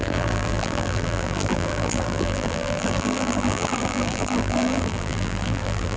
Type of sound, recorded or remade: remade